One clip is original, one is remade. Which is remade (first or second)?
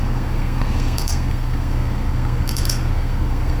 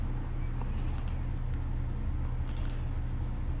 first